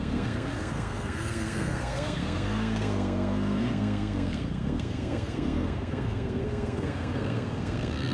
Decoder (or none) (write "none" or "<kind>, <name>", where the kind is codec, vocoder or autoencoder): codec, SNAC